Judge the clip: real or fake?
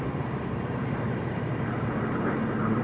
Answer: fake